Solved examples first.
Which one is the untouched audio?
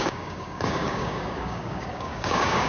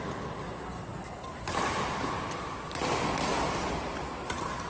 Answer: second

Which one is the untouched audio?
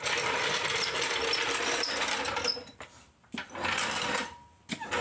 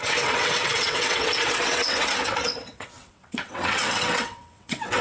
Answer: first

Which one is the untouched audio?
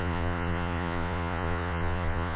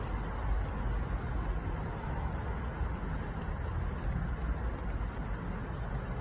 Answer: second